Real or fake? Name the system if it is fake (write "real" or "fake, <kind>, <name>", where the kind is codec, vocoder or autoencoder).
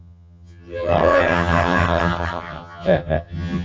fake, vocoder, HiFi-GAN